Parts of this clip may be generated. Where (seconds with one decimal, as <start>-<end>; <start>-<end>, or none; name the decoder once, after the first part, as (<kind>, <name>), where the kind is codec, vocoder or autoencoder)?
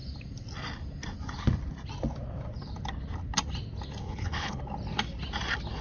4.0-4.6 (codec, HILCodec)